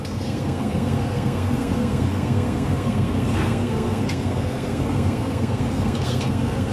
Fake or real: fake